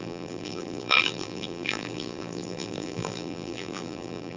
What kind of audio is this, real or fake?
fake